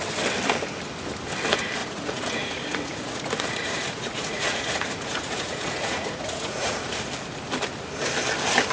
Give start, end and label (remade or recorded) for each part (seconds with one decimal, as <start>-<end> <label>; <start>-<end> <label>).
0.0-1.8 recorded; 1.8-7.0 remade; 7.0-8.7 recorded